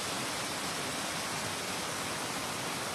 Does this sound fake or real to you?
real